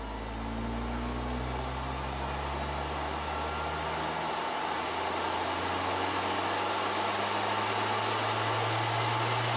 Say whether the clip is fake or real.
real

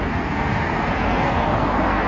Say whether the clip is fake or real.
fake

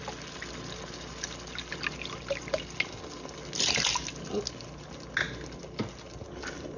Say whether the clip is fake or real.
real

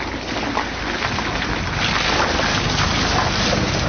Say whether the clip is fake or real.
real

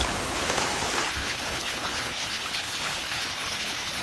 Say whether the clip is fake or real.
fake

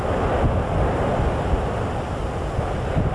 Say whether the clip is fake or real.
real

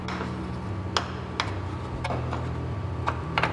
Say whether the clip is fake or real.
real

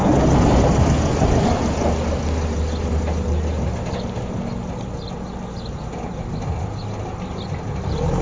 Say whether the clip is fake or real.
real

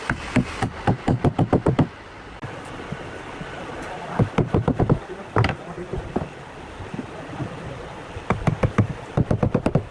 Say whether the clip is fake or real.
real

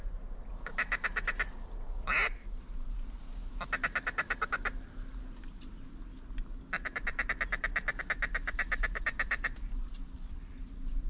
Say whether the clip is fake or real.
real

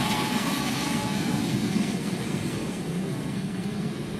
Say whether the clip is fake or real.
fake